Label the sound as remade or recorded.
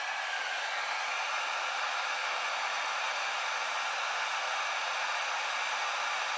recorded